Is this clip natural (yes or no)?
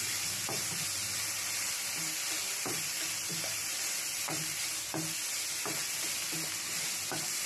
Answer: no